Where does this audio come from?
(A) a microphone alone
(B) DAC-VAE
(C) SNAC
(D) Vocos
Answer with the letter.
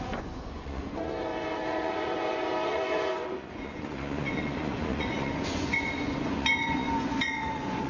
D